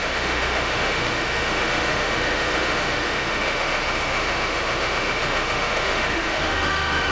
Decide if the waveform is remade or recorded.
remade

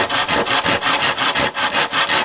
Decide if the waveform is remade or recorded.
recorded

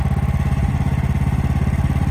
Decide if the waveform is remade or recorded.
recorded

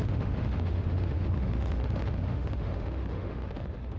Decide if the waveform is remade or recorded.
remade